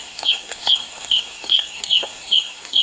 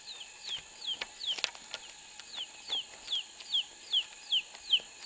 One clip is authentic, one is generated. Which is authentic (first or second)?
second